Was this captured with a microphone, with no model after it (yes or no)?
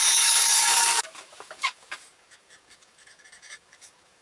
no